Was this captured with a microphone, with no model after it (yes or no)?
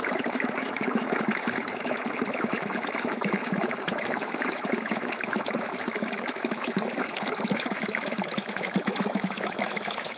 no